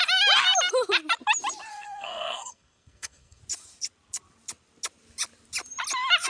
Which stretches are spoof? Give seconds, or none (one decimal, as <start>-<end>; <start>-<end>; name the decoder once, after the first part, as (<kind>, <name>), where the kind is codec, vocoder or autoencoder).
1.7-3.4 (codec, SNAC)